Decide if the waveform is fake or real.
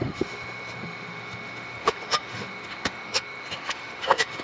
fake